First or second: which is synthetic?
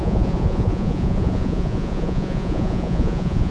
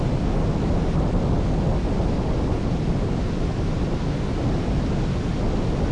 first